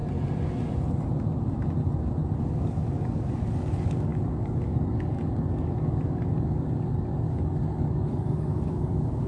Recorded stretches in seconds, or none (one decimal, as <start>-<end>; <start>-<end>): 0.0-2.4